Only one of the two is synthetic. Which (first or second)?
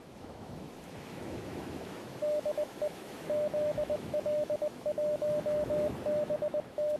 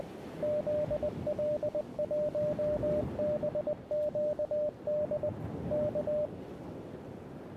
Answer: first